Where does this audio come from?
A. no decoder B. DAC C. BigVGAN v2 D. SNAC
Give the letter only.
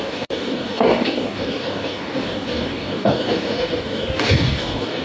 B